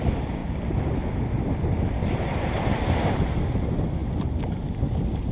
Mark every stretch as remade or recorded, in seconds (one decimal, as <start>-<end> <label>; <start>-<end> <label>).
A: 0.0-5.3 recorded